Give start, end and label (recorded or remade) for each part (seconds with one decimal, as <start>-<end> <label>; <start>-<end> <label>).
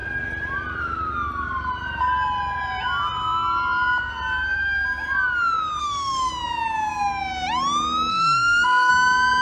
0.0-5.8 recorded; 5.8-6.3 remade; 6.3-8.1 recorded; 8.1-8.9 remade; 8.9-9.4 recorded